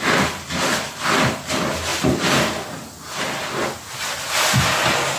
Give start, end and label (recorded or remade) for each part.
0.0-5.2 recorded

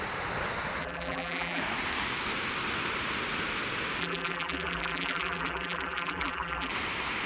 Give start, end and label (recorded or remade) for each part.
0.0-0.8 recorded; 0.8-1.6 remade; 1.6-4.0 recorded; 4.0-6.7 remade; 6.7-7.3 recorded

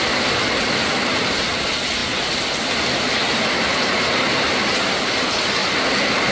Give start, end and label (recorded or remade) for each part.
0.0-2.0 remade; 2.0-5.1 recorded; 5.1-5.6 remade; 5.6-6.3 recorded

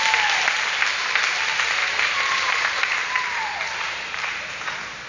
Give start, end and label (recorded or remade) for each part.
0.0-1.8 recorded; 1.8-4.6 remade; 4.6-5.1 recorded

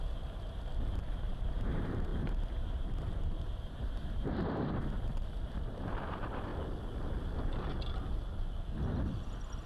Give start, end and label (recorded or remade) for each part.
0.0-6.5 remade; 6.5-9.7 recorded

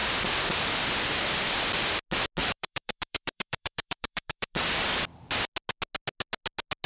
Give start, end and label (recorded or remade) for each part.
0.0-0.8 remade; 0.8-2.4 recorded; 2.4-5.0 remade; 5.0-6.9 recorded

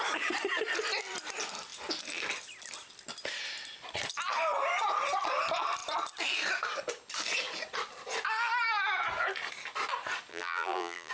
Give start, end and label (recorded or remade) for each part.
0.0-10.3 recorded; 10.3-11.1 remade